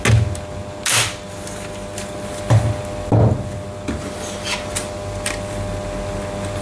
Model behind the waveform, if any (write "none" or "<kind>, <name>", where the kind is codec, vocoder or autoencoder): none